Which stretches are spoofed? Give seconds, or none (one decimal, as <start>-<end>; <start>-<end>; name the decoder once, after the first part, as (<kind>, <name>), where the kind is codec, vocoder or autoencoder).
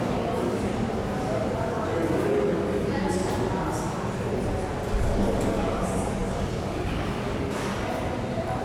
0.0-0.7 (codec, DAC); 1.7-3.2; 4.9-7.7